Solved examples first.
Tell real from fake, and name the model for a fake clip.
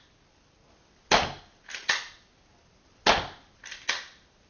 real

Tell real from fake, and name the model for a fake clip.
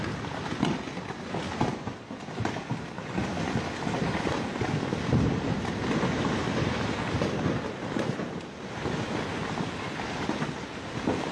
real